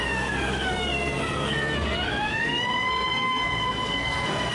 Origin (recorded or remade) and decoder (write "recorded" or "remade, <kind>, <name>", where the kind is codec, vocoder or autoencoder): remade, codec, SNAC